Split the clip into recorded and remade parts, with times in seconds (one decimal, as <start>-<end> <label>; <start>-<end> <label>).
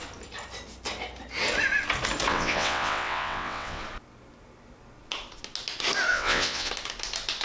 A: 0.0-2.3 recorded; 2.3-3.8 remade; 3.8-6.1 recorded; 6.1-6.7 remade; 6.7-7.4 recorded